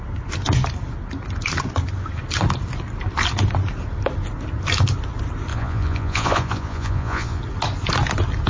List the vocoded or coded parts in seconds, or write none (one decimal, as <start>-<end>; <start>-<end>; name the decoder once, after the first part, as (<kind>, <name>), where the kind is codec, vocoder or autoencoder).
5.5-7.4 (vocoder, Vocos)